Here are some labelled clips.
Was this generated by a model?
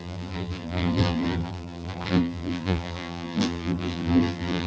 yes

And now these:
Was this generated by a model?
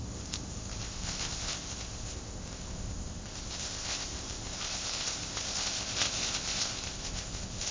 yes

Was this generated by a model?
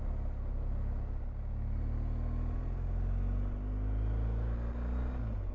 no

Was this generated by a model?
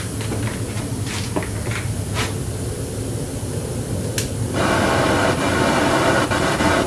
yes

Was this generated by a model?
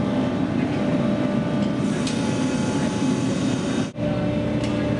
no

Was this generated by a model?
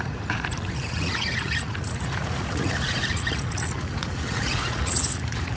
yes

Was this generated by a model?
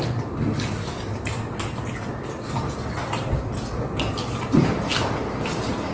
no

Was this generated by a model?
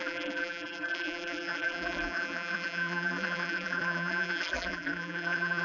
yes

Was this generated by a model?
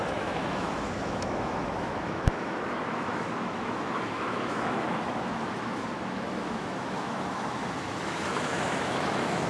yes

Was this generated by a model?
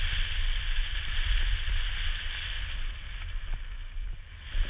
no